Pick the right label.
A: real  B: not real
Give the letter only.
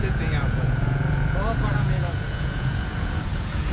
B